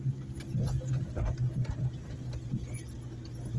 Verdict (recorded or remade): recorded